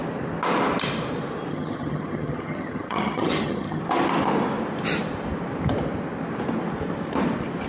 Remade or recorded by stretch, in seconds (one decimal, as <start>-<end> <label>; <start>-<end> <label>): 0.0-1.5 recorded; 1.5-3.8 remade; 3.8-7.7 recorded